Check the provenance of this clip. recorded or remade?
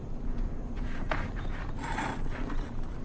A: remade